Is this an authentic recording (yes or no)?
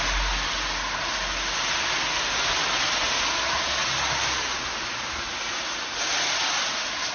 yes